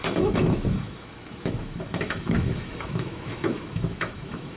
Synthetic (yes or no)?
yes